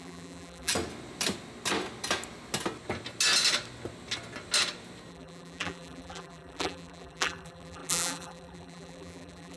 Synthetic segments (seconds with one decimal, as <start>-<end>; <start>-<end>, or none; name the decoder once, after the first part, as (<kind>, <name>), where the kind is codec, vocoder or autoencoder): 0.0-0.7 (vocoder, BigVGAN v2); 5.1-9.6